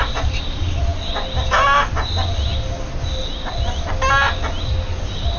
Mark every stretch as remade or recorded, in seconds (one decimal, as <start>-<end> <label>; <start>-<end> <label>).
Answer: 0.0-5.4 recorded